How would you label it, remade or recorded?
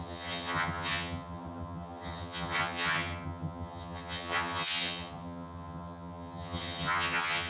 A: remade